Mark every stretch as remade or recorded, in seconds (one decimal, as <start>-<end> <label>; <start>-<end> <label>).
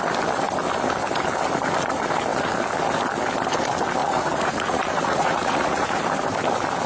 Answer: 0.0-4.0 recorded; 4.0-6.0 remade; 6.0-6.9 recorded